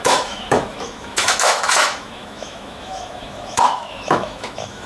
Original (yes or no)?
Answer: no